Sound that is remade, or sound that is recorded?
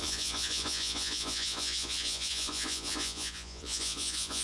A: remade